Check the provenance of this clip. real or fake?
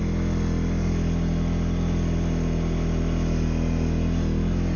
real